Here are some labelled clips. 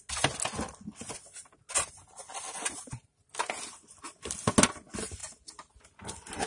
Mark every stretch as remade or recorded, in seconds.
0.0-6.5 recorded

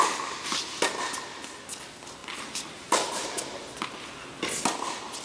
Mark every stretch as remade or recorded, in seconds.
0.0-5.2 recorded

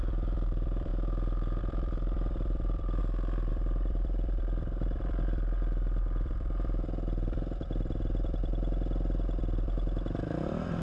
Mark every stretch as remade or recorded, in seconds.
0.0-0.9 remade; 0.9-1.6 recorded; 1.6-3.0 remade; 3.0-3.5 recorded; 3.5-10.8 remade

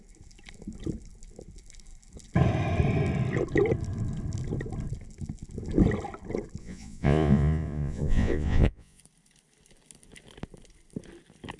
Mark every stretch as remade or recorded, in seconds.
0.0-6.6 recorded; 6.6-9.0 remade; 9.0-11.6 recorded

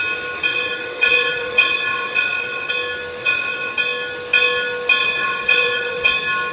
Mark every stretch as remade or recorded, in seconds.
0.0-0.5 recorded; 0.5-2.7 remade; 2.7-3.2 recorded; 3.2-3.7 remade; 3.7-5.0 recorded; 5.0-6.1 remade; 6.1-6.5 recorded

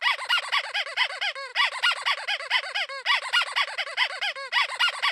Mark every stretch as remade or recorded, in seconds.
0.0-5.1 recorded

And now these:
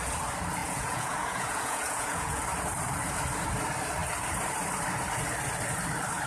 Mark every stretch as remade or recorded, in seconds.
0.0-0.6 recorded; 0.6-2.4 remade; 2.4-6.3 recorded

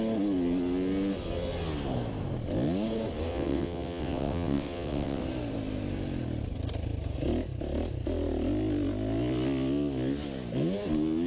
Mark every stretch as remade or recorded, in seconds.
0.0-3.3 recorded; 3.3-5.2 remade; 5.2-11.3 recorded